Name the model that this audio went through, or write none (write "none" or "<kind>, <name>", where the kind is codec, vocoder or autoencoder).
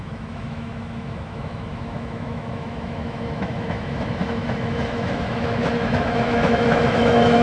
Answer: autoencoder, DAC-VAE